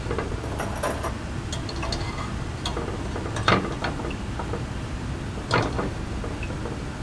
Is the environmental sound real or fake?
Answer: real